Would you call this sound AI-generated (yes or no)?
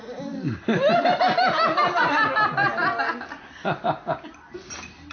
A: no